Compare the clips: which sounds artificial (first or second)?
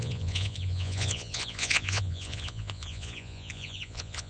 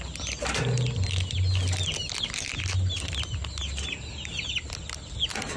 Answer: first